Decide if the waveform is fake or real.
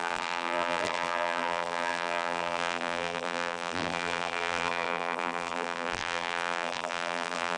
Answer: fake